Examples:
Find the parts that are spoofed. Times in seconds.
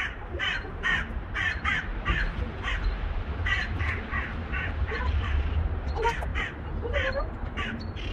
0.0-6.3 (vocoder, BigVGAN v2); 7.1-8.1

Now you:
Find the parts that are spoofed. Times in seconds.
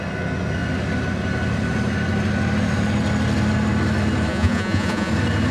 4.3-5.1 (vocoder, Vocos)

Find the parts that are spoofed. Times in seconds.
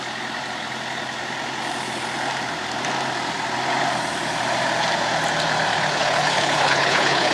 5.7-7.3 (codec, HILCodec)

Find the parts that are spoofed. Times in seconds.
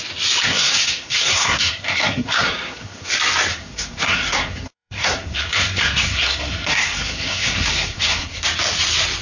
0.4-3.1 (codec, SNAC); 3.5-8.4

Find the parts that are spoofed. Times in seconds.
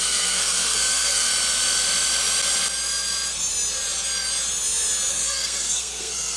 0.0-1.3 (codec, SNAC); 5.1-6.4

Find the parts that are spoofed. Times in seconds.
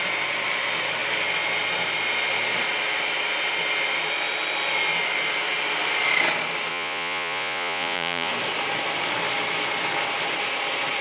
6.7-8.3 (vocoder, Vocos)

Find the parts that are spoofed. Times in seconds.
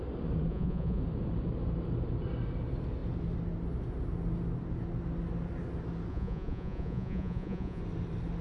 0.5-1.0 (vocoder, Vocos); 6.1-7.8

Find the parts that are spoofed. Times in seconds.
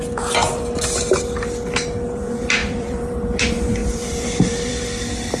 2.6-3.1 (vocoder, BigVGAN v2); 3.8-4.8